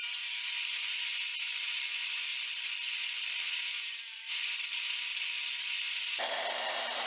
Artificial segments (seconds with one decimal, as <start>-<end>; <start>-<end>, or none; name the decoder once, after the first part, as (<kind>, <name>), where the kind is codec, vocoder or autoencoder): 0.0-2.3 (vocoder, BigVGAN v2); 3.5-5.1; 6.2-7.1